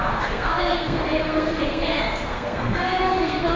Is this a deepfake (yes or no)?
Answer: yes